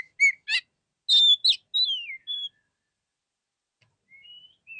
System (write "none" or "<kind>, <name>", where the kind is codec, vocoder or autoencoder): none